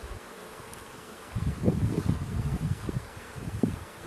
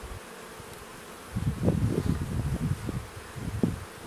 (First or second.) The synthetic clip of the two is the first